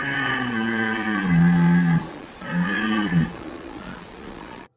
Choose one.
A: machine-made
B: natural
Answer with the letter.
A